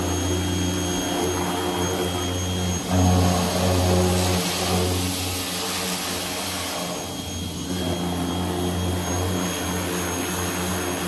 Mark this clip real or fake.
real